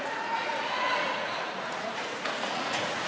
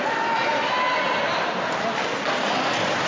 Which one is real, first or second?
second